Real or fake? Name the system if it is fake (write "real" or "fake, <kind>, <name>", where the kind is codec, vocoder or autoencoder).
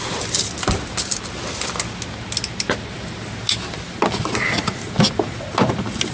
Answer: real